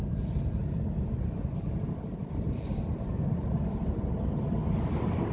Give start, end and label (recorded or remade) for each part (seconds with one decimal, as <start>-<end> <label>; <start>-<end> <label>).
0.0-5.3 recorded